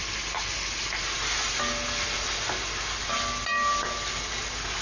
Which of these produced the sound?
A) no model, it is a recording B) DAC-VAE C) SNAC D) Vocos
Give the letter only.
A